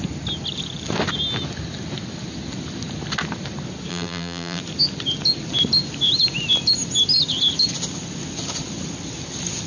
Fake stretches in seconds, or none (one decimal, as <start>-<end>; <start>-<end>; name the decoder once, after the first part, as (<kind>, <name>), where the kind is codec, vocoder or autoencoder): 3.9-4.6 (vocoder, BigVGAN v2)